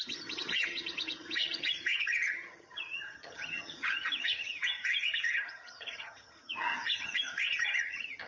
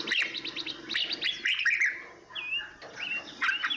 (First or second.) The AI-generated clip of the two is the first